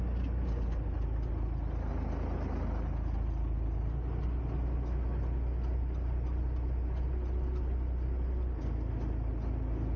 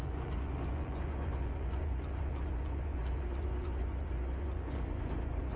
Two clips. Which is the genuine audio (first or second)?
first